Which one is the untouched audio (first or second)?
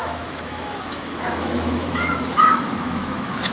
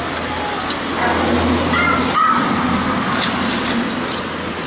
second